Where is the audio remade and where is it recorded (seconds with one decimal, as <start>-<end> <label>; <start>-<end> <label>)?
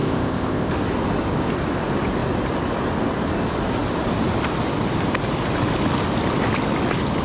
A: 0.0-0.7 remade; 0.7-7.2 recorded